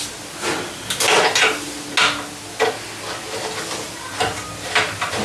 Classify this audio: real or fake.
real